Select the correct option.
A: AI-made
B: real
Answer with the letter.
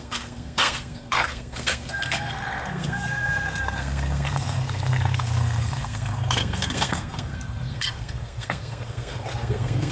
A